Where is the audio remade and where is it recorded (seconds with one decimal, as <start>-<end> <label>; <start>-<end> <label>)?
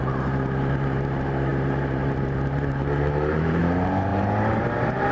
0.0-5.1 remade